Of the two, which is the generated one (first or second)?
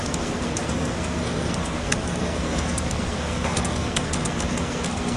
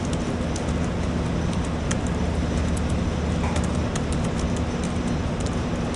first